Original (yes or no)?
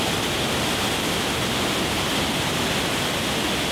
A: yes